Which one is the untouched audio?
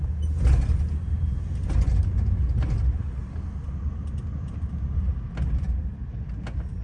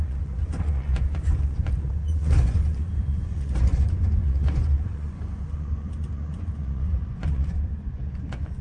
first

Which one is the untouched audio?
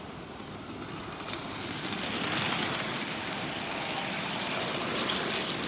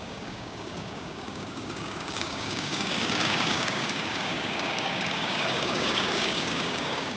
first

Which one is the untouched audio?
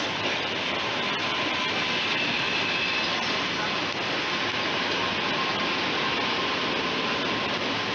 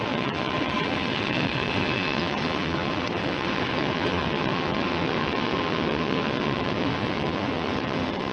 first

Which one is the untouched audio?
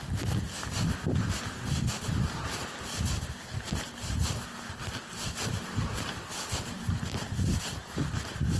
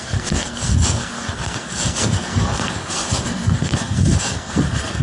first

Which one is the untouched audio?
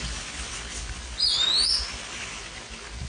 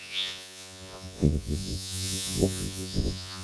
first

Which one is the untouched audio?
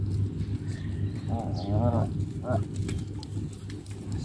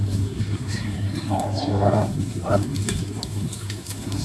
first